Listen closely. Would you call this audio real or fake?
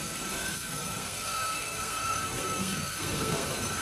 fake